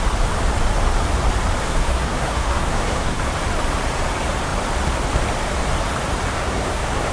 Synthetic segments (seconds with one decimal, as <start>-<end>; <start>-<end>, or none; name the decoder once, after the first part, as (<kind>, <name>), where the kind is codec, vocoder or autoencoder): 1.6-3.2 (codec, SNAC); 6.3-7.1